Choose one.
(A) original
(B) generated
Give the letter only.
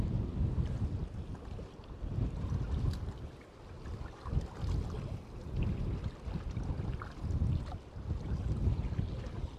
A